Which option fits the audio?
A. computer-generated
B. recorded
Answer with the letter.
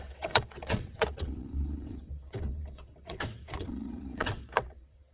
A